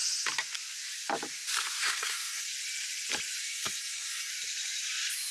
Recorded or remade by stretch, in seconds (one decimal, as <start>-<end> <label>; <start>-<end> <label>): 0.0-1.8 recorded; 1.8-2.5 remade; 2.5-3.4 recorded; 3.4-4.3 remade; 4.3-5.3 recorded

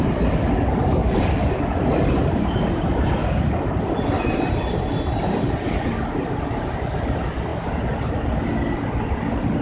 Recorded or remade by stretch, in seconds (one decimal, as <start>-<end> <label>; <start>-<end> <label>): 0.0-1.0 recorded; 1.0-1.6 remade; 1.6-9.6 recorded

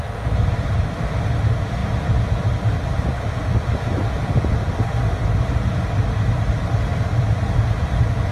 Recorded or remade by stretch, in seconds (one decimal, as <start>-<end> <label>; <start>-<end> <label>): 0.0-1.8 recorded; 1.8-3.5 remade; 3.5-6.9 recorded; 6.9-7.4 remade; 7.4-8.3 recorded

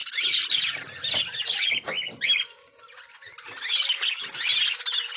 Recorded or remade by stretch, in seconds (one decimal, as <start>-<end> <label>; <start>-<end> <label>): 0.0-5.2 recorded

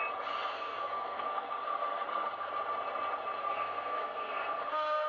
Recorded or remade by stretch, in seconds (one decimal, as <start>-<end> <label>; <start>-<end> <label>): 0.0-0.5 recorded; 0.5-2.5 remade; 2.5-3.4 recorded; 3.4-5.1 remade

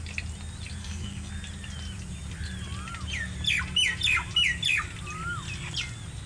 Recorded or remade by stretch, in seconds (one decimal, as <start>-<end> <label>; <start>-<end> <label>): 0.0-0.8 recorded; 0.8-1.3 remade; 1.3-6.3 recorded

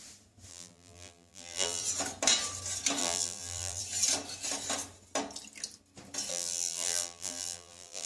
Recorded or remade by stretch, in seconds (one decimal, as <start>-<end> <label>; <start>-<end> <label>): 0.0-0.5 recorded; 0.5-1.8 remade; 1.8-3.0 recorded; 3.0-3.8 remade; 3.8-6.3 recorded; 6.3-8.1 remade

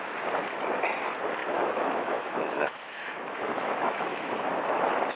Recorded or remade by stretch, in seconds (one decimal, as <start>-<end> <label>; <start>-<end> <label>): 0.0-1.4 recorded; 1.4-4.5 remade; 4.5-5.2 recorded